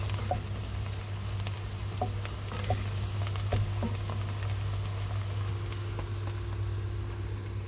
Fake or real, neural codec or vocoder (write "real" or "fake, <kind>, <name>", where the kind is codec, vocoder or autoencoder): real